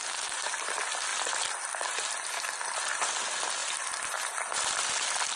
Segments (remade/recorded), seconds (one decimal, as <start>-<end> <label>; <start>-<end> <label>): 0.0-5.4 recorded